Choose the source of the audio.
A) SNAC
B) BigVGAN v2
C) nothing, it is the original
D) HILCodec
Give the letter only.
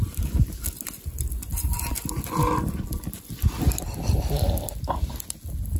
C